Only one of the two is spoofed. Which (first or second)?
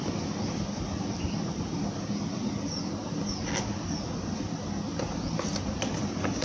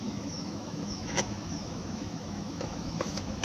second